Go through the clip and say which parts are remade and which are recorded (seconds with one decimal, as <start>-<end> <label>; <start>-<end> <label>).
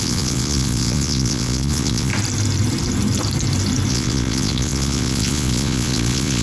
0.0-2.1 remade; 2.1-3.9 recorded; 3.9-6.4 remade